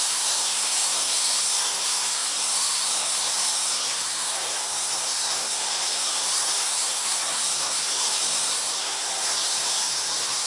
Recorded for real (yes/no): no